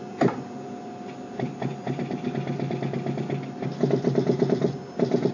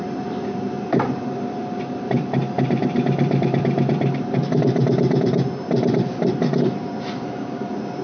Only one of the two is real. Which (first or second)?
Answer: first